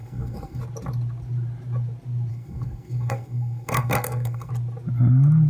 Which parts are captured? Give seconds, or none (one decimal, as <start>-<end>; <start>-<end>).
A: 0.6-2.3; 4.5-5.5